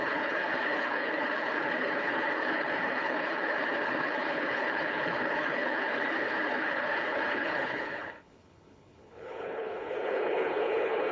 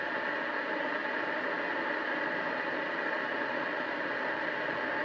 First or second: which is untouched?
second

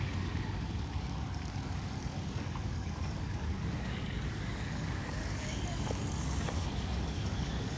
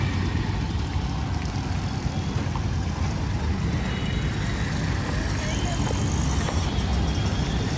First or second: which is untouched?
second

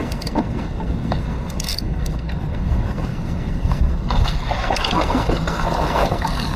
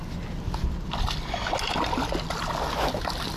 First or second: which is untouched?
second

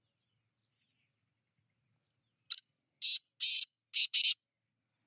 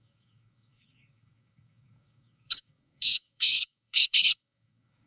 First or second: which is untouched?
first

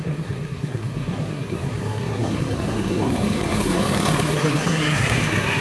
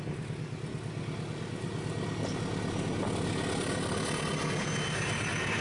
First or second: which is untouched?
second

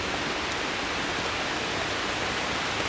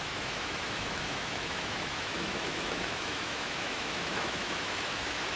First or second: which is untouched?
first